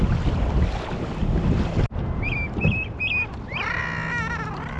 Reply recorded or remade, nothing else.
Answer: recorded